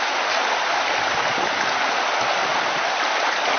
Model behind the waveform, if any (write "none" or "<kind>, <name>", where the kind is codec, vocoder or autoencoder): none